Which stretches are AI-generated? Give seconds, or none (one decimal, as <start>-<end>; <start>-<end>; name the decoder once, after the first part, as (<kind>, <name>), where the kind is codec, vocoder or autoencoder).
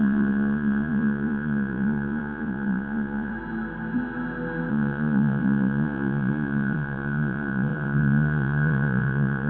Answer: 0.0-3.3 (vocoder, Vocos); 4.7-9.5